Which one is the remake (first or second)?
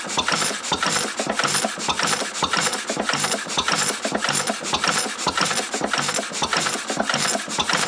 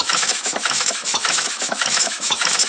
second